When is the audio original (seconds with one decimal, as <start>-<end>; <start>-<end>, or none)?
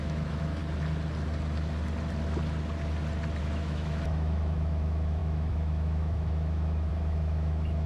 0.6-3.4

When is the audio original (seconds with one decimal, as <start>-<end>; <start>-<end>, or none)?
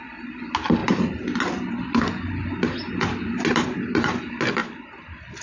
0.0-5.4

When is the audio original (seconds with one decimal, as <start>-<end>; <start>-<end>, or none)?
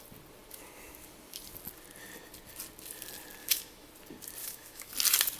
0.0-3.4; 3.9-4.4; 4.9-5.4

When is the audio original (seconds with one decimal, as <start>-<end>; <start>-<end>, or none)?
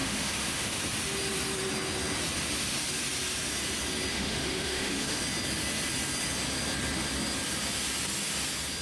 0.8-4.1; 5.2-8.8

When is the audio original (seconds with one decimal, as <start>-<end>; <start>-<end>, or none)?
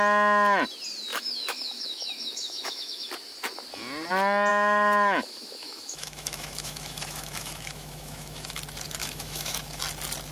0.0-1.1; 3.1-4.5; 8.6-9.0; 9.8-10.3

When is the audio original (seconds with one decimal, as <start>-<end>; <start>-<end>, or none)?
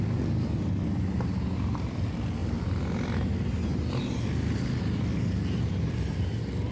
0.0-6.7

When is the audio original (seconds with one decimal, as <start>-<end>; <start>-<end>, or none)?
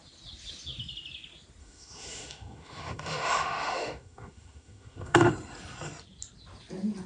0.0-1.6; 5.3-7.1